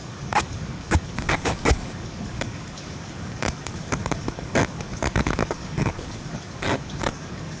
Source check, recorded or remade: remade